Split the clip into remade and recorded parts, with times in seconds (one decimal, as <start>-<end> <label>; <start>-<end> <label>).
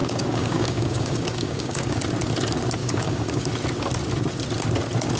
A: 0.0-2.0 remade; 2.0-2.8 recorded; 2.8-3.5 remade; 3.5-5.2 recorded